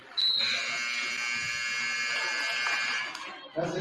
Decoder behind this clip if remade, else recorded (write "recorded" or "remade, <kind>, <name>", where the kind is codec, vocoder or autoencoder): recorded